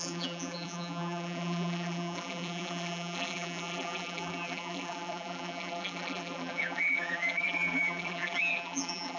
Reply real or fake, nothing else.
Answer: fake